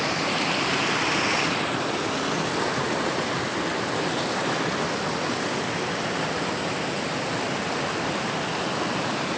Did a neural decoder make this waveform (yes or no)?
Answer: no